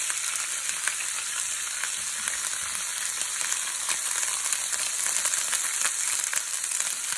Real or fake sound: real